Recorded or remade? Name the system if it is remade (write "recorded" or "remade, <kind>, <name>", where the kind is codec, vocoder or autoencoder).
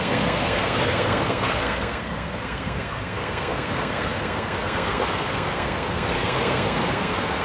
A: remade, codec, SNAC